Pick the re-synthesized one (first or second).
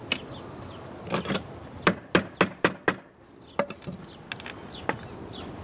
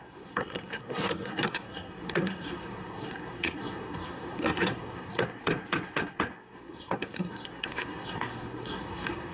second